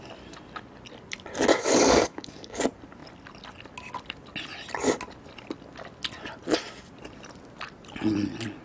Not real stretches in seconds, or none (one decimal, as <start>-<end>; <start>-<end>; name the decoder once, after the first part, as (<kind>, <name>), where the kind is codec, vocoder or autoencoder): 1.5-2.6 (codec, DAC)